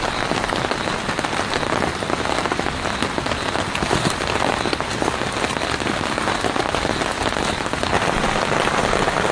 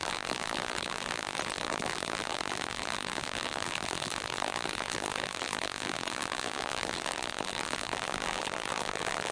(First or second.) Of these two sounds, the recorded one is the first